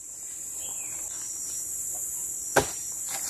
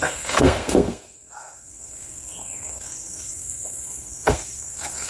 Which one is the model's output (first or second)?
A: second